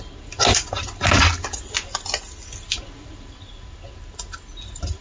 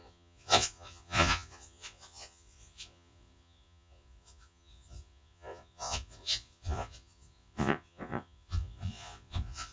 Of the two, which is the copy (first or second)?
second